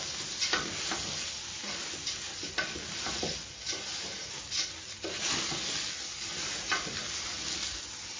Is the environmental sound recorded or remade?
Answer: recorded